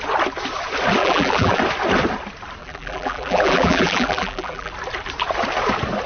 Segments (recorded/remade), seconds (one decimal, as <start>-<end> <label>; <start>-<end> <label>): 0.0-1.0 recorded; 1.0-1.6 remade; 1.6-2.6 recorded; 2.6-4.7 remade; 4.7-6.1 recorded